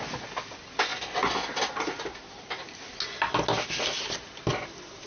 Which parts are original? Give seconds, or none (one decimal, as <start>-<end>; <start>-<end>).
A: 0.0-5.1

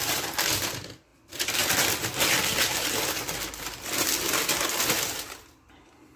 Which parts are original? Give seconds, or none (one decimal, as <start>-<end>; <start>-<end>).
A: 0.0-6.2

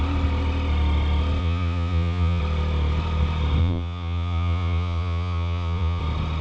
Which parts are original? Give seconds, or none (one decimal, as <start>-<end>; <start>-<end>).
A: 0.0-1.4; 2.4-3.6; 6.0-6.4

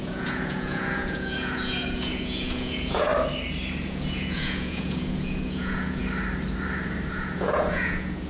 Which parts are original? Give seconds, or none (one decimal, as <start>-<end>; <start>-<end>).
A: 3.1-3.9; 6.0-7.1